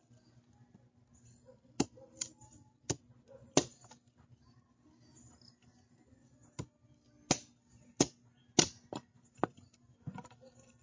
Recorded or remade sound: recorded